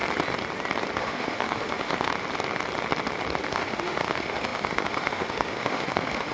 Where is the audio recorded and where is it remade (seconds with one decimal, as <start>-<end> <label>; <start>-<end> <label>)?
0.0-1.0 recorded; 1.0-2.1 remade; 2.1-3.5 recorded; 3.5-6.3 remade